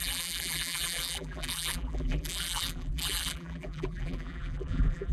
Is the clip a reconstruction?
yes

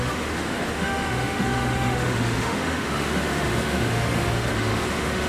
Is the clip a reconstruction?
yes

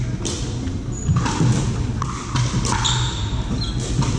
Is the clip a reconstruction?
no